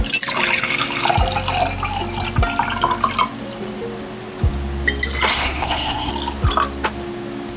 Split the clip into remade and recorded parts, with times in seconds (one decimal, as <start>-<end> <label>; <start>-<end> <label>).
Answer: 0.0-5.3 recorded; 5.3-6.1 remade; 6.1-7.6 recorded